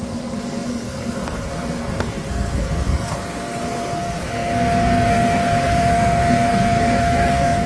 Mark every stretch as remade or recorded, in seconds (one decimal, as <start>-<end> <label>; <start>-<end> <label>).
0.0-7.7 remade